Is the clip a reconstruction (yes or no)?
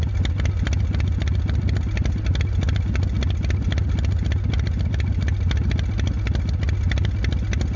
no